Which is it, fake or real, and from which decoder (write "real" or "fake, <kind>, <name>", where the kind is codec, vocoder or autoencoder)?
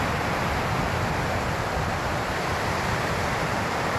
real